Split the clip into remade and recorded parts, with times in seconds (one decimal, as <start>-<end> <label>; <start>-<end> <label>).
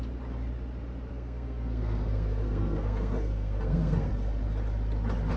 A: 0.0-1.1 recorded; 1.1-4.1 remade; 4.1-5.4 recorded